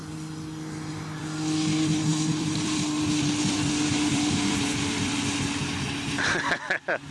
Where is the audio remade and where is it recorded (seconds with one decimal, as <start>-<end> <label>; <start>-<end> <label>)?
0.0-1.2 remade; 1.2-2.1 recorded; 2.1-6.4 remade; 6.4-7.1 recorded